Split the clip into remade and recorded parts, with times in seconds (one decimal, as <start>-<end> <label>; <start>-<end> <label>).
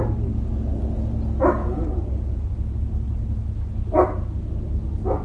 0.0-1.6 recorded; 1.6-2.5 remade; 2.5-5.2 recorded